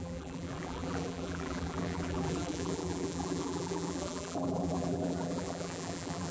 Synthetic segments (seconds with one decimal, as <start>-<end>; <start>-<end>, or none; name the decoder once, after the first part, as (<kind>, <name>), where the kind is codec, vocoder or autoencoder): 0.0-6.3 (vocoder, BigVGAN v2)